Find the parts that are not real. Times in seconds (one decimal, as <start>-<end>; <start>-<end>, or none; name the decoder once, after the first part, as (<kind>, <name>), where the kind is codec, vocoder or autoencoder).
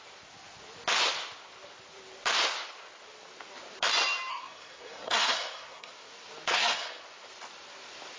4.3-5.9 (codec, SNAC); 6.5-7.0